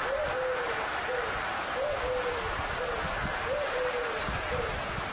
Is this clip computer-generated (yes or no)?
no